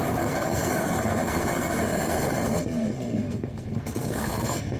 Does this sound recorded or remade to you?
remade